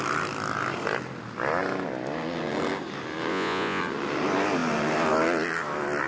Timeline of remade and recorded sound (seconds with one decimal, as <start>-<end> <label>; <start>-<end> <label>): 0.0-3.3 recorded; 3.3-3.8 remade; 3.8-6.1 recorded